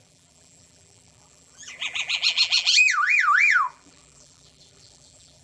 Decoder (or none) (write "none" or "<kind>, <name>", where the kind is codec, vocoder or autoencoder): vocoder, BigVGAN v2